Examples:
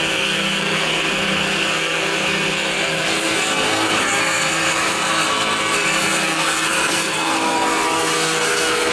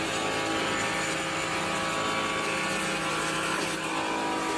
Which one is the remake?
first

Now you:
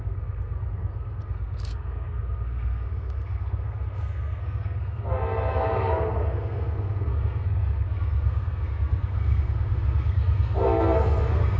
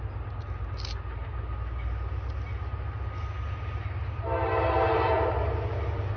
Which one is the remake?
first